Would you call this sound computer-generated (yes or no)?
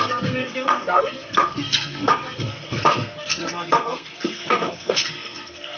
yes